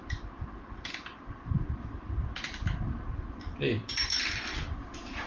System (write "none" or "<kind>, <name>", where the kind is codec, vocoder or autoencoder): none